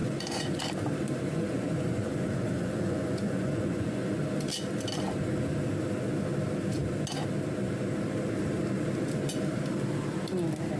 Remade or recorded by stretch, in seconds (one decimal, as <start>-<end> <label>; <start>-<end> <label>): 0.0-0.6 remade; 0.6-1.3 recorded; 1.3-4.2 remade; 4.2-10.8 recorded